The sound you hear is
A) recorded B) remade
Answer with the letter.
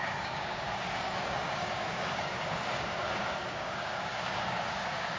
B